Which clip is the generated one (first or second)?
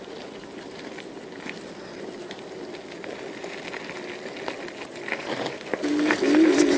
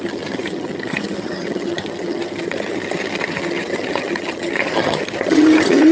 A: second